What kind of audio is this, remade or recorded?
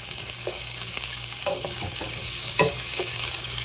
remade